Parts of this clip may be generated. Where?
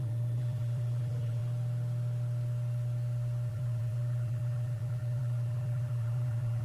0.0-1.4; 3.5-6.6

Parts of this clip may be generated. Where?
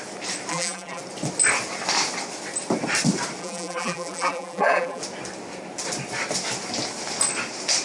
0.5-1.0; 3.4-5.0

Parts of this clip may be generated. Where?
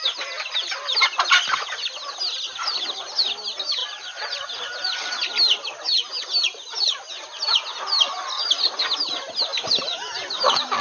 3.8-5.1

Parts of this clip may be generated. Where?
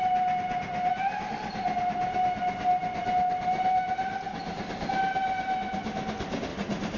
6.5-7.0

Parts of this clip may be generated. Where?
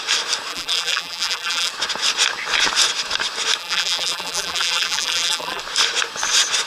0.5-1.7; 3.6-5.6